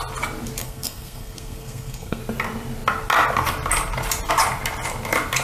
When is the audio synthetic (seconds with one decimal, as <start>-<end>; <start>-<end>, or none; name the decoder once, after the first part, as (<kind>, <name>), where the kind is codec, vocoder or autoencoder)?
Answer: 0.6-2.2 (codec, SNAC)